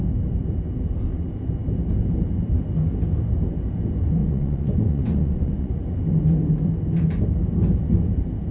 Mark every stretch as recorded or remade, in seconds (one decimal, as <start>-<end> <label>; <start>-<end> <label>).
0.0-4.2 recorded; 4.2-5.8 remade; 5.8-8.5 recorded